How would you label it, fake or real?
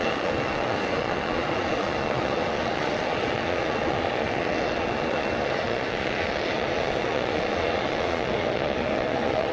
fake